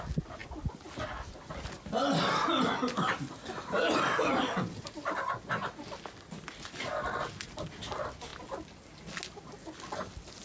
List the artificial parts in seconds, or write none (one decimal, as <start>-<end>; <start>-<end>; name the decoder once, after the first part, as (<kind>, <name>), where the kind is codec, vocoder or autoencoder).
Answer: none